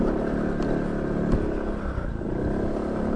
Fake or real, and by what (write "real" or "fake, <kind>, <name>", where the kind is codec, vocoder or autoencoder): real